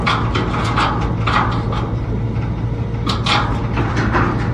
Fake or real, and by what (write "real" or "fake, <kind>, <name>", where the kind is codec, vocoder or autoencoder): real